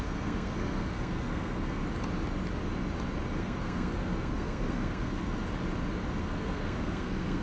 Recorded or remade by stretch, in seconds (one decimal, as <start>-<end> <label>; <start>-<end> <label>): 0.0-1.8 remade; 1.8-3.4 recorded; 3.4-5.3 remade; 5.3-6.2 recorded; 6.2-7.4 remade